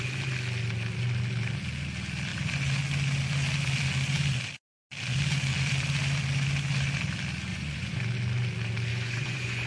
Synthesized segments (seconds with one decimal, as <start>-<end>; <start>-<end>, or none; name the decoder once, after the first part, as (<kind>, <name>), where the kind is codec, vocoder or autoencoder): 7.5-8.0 (vocoder, Vocos); 8.9-9.7